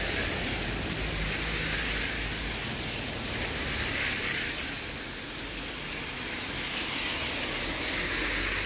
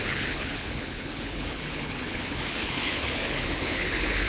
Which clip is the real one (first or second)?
first